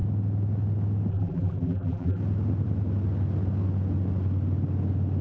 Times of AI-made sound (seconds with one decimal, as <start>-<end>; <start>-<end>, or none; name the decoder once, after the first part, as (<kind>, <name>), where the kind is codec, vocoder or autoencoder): 1.1-2.2 (vocoder, BigVGAN v2)

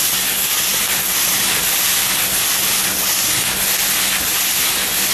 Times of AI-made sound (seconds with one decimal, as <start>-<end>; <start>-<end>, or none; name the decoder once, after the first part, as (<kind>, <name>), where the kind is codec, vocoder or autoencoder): none

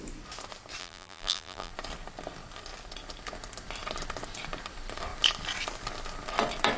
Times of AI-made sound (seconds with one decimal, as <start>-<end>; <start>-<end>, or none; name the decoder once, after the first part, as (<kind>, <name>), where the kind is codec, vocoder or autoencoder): 0.8-1.7 (vocoder, BigVGAN v2)

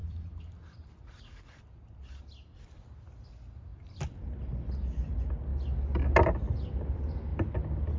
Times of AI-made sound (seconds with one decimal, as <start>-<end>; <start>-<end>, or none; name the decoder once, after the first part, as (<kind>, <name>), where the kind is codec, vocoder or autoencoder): 0.0-2.2 (vocoder, BigVGAN v2); 3.7-4.2